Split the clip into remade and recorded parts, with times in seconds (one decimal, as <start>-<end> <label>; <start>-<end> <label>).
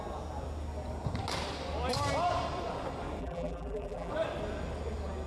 0.0-3.2 recorded; 3.2-4.1 remade; 4.1-5.3 recorded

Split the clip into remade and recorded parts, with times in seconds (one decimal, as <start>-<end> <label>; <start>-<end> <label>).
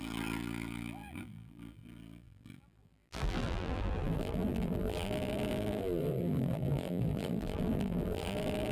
0.0-8.7 remade